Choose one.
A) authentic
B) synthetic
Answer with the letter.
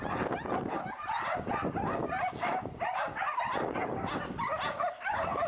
A